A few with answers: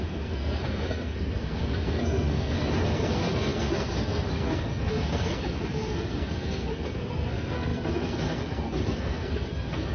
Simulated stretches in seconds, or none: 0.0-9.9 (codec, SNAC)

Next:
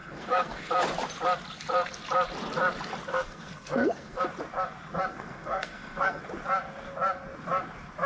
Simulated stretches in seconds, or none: 0.0-0.7 (codec, SNAC); 3.1-4.2; 5.1-6.2

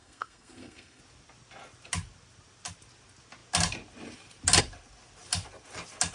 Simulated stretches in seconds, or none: 0.0-1.0 (codec, SNAC)

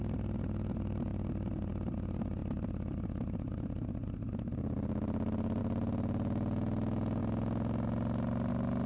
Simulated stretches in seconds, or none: none

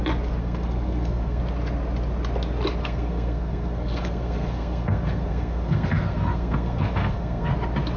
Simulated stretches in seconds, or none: 0.4-1.4 (codec, SNAC); 2.8-7.5